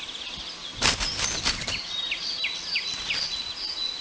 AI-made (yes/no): no